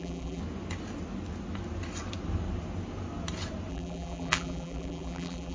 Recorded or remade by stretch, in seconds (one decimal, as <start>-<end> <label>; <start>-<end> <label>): 0.0-0.4 remade; 0.4-3.7 recorded; 3.7-5.5 remade